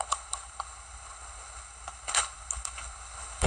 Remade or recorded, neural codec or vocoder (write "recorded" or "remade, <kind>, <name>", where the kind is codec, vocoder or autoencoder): remade, codec, HILCodec